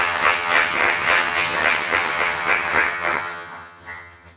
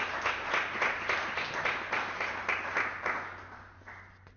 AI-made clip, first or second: first